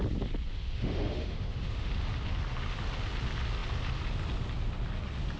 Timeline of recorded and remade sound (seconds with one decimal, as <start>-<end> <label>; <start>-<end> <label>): 0.0-0.5 recorded; 0.5-1.9 remade; 1.9-5.4 recorded